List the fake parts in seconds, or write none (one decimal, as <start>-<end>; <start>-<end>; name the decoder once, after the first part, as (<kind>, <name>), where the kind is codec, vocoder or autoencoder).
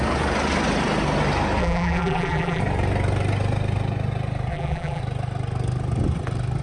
1.6-2.6 (vocoder, BigVGAN v2); 4.5-5.0